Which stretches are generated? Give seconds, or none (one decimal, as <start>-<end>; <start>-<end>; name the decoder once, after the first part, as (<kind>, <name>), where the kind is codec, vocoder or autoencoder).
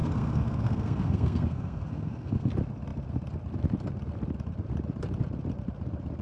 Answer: 0.0-2.5 (codec, SNAC)